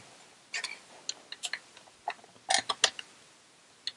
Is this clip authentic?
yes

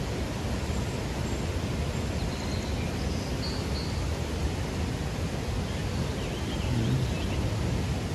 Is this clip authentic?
yes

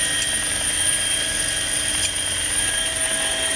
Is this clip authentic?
yes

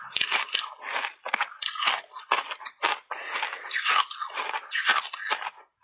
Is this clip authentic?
yes